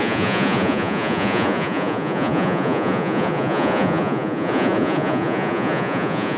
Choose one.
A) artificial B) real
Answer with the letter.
A